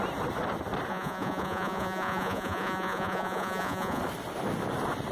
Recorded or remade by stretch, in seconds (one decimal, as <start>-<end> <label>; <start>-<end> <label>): 0.0-0.9 recorded; 0.9-4.0 remade; 4.0-5.1 recorded